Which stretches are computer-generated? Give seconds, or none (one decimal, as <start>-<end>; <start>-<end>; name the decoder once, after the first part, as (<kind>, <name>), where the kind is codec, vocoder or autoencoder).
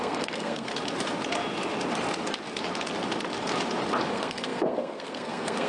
0.0-0.7 (codec, SNAC); 4.1-5.7